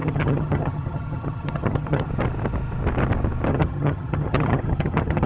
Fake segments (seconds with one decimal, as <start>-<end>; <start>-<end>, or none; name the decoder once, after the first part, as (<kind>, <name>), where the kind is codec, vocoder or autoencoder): 0.0-2.1 (vocoder, HiFi-GAN); 3.5-5.3